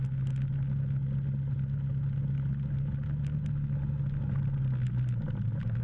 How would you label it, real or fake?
real